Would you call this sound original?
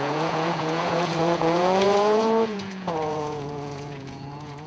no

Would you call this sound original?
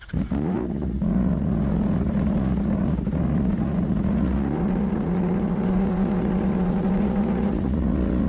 no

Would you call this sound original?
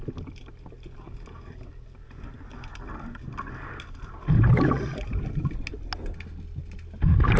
yes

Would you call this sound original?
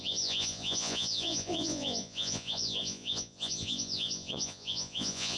no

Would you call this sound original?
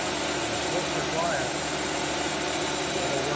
yes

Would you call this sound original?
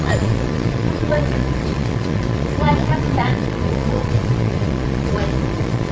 no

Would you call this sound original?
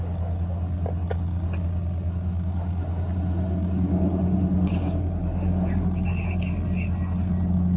yes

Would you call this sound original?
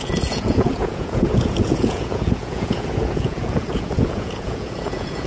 no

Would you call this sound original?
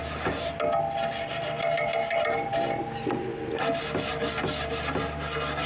yes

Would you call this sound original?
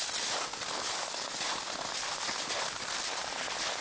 yes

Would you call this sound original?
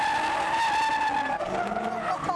yes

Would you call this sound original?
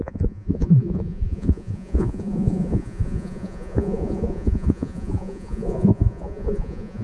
no